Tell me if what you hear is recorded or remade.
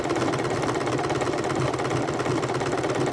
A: recorded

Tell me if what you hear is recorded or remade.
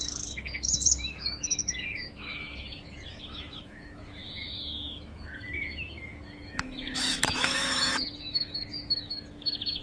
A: remade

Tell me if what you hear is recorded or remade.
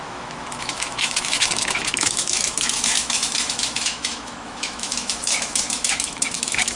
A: remade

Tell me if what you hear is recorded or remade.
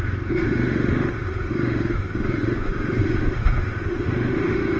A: remade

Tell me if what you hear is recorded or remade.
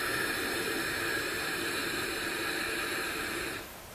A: recorded